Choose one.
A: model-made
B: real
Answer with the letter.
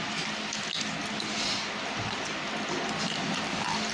B